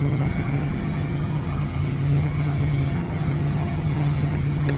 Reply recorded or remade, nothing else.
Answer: remade